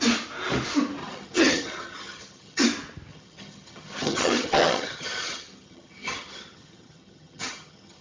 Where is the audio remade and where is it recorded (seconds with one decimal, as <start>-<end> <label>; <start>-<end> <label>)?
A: 0.0-1.0 recorded; 1.0-2.6 remade; 2.6-3.1 recorded; 3.1-8.0 remade